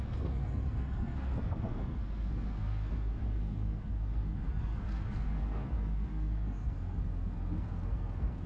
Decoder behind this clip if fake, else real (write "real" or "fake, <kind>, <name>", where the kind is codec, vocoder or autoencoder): fake, codec, SNAC